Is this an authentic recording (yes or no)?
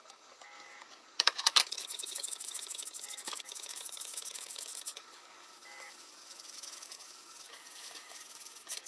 no